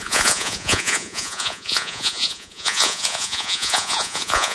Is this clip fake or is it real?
fake